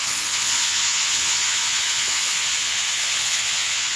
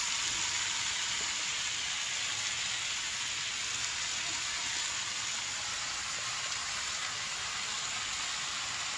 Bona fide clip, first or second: second